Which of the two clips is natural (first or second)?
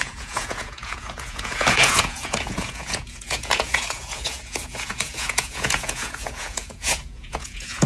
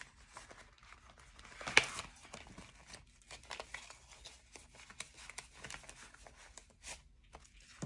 second